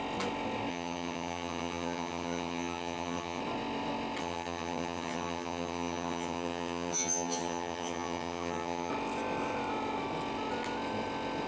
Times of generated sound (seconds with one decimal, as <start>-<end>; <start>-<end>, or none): 0.7-3.4; 4.2-8.9